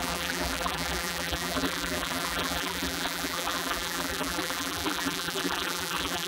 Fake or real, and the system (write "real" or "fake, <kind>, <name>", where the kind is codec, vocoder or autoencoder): fake, vocoder, BigVGAN v2